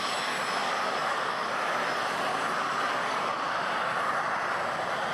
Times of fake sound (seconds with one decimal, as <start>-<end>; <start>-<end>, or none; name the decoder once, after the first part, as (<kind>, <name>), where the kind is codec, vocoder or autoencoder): 0.6-1.5 (codec, DAC); 2.3-3.3